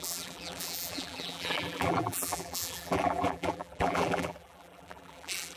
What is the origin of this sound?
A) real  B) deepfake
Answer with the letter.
B